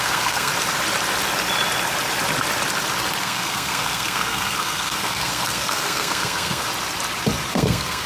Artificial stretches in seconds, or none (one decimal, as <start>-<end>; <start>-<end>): 0.0-0.5; 3.2-6.7; 7.5-8.1